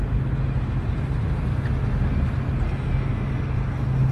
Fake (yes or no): no